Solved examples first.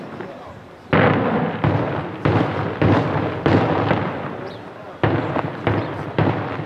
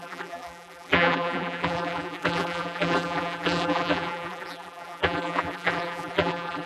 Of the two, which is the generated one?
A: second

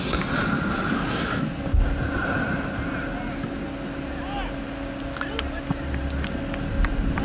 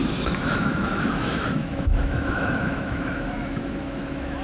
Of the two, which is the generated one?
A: second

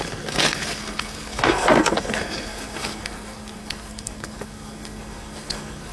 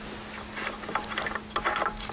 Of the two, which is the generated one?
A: first